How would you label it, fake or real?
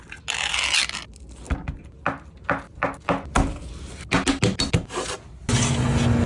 real